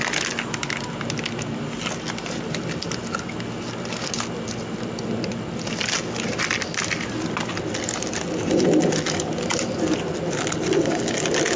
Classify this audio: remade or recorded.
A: recorded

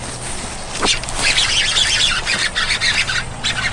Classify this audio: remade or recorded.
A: recorded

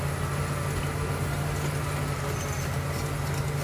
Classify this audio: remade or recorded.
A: recorded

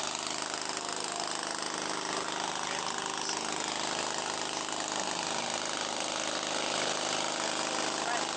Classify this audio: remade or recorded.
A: recorded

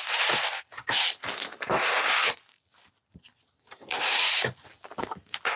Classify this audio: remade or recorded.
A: recorded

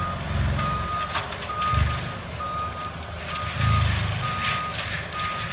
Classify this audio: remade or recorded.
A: recorded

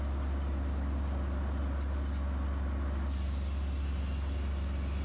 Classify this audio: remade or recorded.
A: recorded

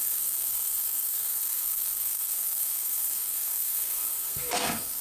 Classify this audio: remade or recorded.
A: remade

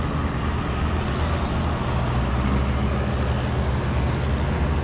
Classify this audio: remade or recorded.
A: recorded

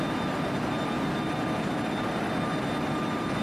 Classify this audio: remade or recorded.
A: recorded